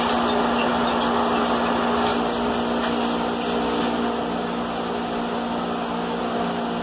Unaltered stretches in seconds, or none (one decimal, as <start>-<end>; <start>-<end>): 0.0-6.8